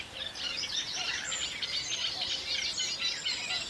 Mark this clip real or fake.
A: real